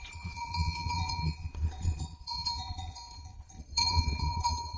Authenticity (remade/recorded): remade